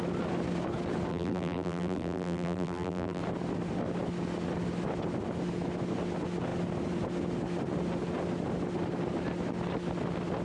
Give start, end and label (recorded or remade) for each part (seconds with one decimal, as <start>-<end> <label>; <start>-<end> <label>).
0.0-1.1 recorded; 1.1-3.2 remade; 3.2-10.4 recorded